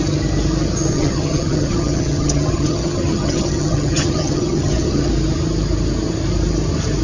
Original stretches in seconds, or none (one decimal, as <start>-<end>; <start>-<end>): 0.0-0.9; 5.1-7.0